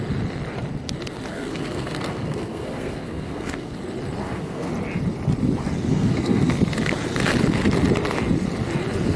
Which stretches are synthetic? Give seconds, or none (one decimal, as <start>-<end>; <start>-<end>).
1.3-3.7; 4.2-4.7; 5.9-6.5